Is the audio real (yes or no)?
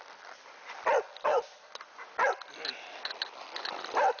yes